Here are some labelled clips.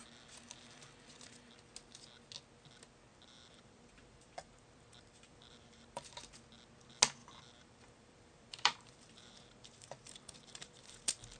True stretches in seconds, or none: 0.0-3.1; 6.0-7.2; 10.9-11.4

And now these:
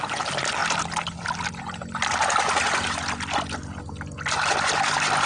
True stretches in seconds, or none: 0.0-5.3

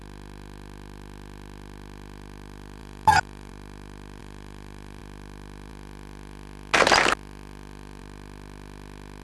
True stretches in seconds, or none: 0.0-2.8; 3.5-4.2; 5.0-9.2

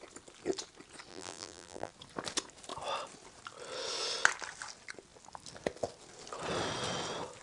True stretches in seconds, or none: 0.0-1.1; 1.9-7.4